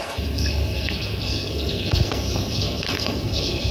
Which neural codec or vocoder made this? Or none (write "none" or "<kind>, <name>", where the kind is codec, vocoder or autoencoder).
codec, SNAC